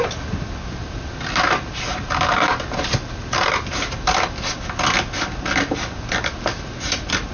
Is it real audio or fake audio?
real